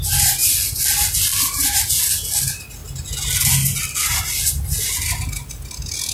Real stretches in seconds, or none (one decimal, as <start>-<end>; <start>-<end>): 0.0-6.1